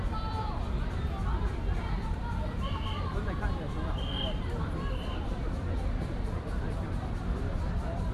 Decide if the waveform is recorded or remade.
remade